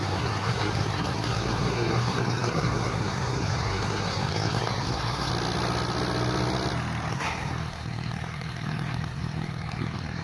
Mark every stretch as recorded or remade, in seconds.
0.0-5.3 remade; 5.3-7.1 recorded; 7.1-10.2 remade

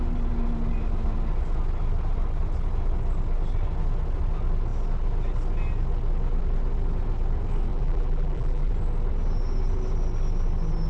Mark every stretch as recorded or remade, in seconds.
0.0-7.7 recorded; 7.7-8.7 remade; 8.7-10.9 recorded

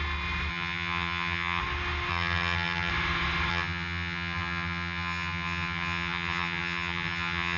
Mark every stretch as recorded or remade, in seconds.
0.0-0.5 recorded; 0.5-1.6 remade; 1.6-2.1 recorded; 2.1-2.9 remade; 2.9-3.5 recorded; 3.5-7.6 remade